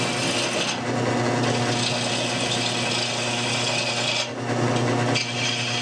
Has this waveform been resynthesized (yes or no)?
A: no